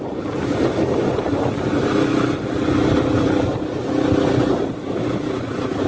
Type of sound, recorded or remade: recorded